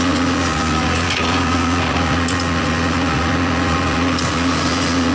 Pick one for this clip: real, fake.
fake